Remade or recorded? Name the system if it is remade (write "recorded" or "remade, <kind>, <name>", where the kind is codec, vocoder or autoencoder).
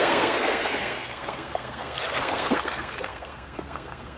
remade, codec, SNAC